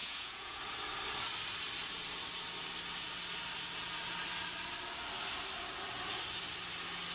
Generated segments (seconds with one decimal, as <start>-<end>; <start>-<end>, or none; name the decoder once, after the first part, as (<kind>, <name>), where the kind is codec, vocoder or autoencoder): 0.0-0.6 (vocoder, Vocos)